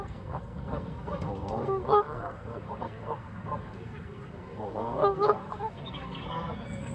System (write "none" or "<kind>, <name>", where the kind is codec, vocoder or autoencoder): codec, SNAC